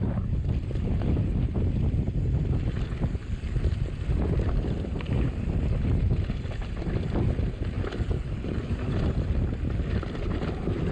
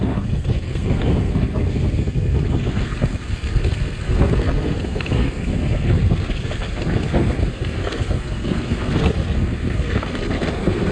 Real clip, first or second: first